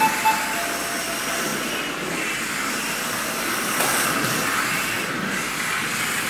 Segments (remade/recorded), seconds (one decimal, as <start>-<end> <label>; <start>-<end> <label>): 0.0-6.3 recorded